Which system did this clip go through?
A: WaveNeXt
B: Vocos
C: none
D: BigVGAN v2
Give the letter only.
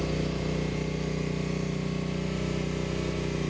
C